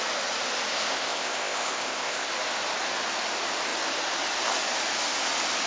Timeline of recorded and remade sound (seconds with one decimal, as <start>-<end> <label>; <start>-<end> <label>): 0.0-0.7 recorded; 0.7-2.3 remade; 2.3-5.7 recorded